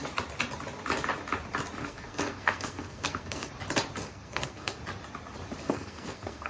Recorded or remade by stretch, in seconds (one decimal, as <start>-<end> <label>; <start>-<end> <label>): 0.0-1.8 recorded; 1.8-3.5 remade; 3.5-4.1 recorded; 4.1-4.8 remade; 4.8-5.6 recorded; 5.6-6.5 remade

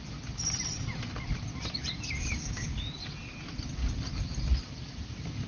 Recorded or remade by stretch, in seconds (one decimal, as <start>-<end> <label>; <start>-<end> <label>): 0.0-2.2 recorded; 2.2-2.8 remade; 2.8-5.5 recorded

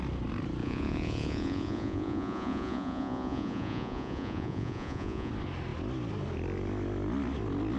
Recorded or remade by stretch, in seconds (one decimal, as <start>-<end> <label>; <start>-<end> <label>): 0.0-0.6 recorded; 0.6-5.3 remade; 5.3-7.8 recorded

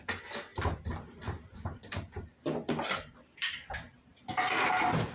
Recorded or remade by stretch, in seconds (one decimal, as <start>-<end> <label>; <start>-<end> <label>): 0.0-0.5 recorded; 0.5-2.4 remade; 2.4-5.1 recorded

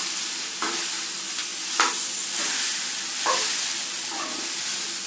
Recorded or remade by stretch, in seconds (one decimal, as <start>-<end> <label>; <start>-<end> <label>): 0.0-5.1 recorded

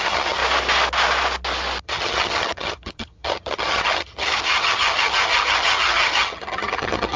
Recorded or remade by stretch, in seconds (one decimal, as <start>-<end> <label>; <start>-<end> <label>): 0.0-0.4 remade; 0.4-1.8 recorded; 1.8-7.2 remade